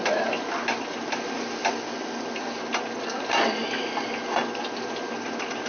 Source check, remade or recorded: recorded